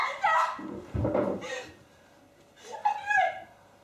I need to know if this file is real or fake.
real